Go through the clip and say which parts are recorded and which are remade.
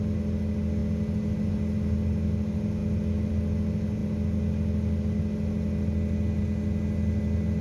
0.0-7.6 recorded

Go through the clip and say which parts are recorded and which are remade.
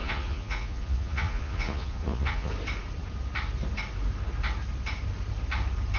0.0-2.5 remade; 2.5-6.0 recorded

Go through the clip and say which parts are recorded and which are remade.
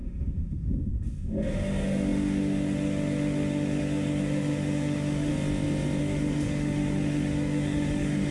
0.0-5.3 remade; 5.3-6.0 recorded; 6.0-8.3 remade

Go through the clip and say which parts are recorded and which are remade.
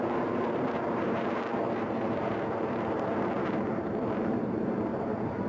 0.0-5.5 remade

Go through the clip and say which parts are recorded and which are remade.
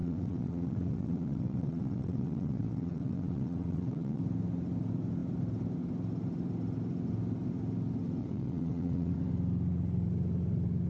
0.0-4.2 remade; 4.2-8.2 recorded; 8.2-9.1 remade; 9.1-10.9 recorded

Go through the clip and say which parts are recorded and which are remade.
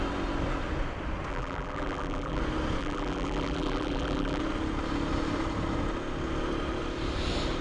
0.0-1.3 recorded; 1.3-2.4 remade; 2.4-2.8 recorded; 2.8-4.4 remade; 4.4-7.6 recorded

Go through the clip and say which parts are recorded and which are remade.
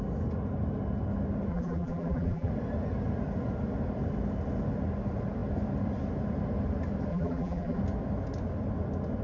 0.0-1.5 recorded; 1.5-2.5 remade; 2.5-7.1 recorded; 7.1-7.8 remade; 7.8-9.2 recorded